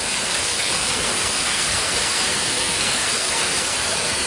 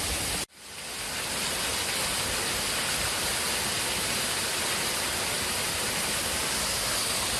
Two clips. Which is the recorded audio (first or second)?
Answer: second